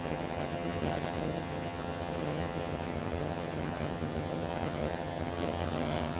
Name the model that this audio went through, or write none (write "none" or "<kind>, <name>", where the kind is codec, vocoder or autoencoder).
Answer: vocoder, HiFi-GAN